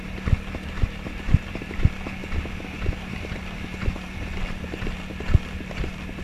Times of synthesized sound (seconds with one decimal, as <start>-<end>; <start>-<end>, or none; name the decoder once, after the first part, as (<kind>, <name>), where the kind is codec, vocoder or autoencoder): none